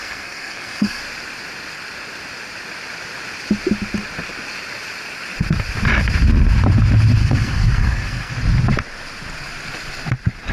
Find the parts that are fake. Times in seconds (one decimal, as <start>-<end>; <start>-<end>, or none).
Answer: 0.0-1.0; 7.2-8.3